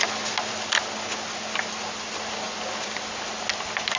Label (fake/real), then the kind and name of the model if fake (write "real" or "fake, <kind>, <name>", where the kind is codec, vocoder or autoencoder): real